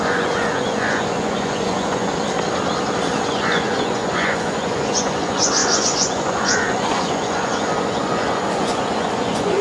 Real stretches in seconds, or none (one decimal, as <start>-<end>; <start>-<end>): 2.1-3.3